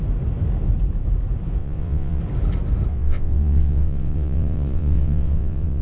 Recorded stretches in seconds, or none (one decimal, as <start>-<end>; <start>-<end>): 0.0-1.6; 2.2-2.9